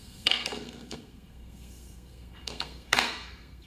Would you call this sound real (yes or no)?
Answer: no